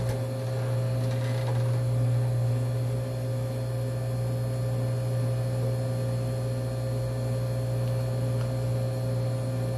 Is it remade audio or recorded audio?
recorded